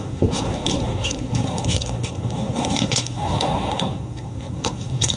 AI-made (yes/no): yes